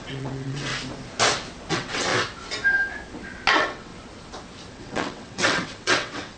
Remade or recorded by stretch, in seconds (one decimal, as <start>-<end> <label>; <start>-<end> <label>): 0.0-0.7 remade; 0.7-1.7 recorded; 1.7-2.1 remade; 2.1-3.5 recorded; 3.5-3.9 remade; 3.9-4.7 recorded; 4.7-6.4 remade